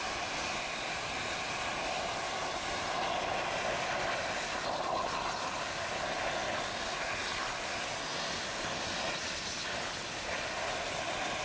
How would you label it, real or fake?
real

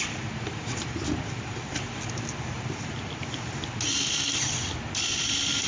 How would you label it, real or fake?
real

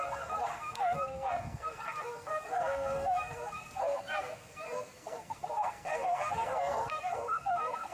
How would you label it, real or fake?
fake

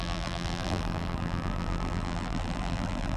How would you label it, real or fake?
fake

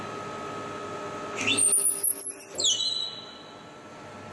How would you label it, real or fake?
real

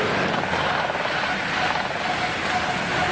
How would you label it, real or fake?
real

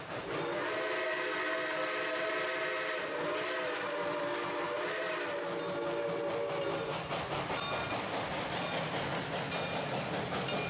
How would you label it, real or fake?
real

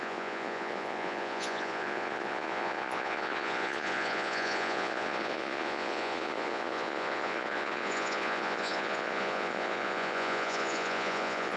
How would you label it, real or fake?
fake